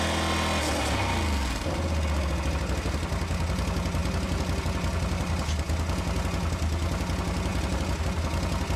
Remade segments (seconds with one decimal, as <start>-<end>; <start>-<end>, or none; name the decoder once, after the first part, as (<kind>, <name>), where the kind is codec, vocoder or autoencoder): none